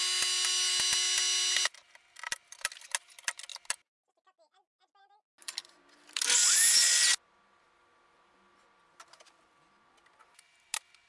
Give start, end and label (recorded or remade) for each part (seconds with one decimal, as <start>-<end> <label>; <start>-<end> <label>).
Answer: 0.0-11.1 recorded